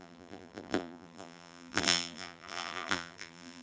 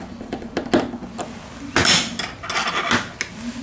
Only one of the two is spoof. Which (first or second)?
first